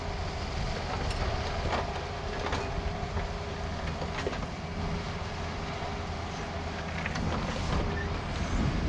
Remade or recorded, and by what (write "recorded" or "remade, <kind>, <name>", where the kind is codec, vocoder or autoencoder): recorded